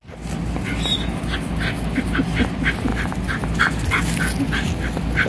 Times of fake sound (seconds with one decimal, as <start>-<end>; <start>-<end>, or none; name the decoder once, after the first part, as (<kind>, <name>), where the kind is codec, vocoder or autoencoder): 2.9-4.2 (vocoder, BigVGAN v2)